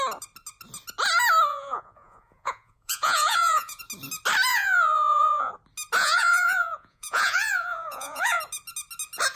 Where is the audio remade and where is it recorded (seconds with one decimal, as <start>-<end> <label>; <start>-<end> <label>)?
0.0-1.5 recorded; 1.5-3.8 remade; 3.8-4.5 recorded; 4.5-5.5 remade; 5.5-6.0 recorded; 6.0-8.4 remade; 8.4-9.3 recorded